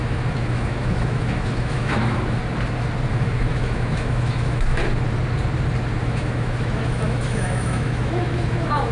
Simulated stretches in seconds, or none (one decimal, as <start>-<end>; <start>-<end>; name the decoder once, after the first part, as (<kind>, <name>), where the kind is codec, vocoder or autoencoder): 0.0-2.4 (autoencoder, DAC-VAE); 3.1-4.8; 6.0-8.9